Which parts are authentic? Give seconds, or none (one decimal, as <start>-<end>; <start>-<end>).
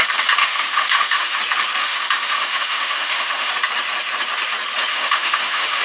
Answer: 0.0-0.4; 1.4-1.8; 3.5-4.9